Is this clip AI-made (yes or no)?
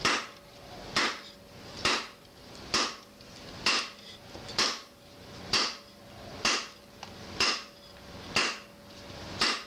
no